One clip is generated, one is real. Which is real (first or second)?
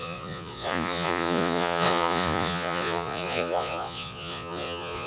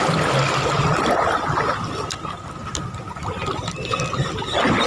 second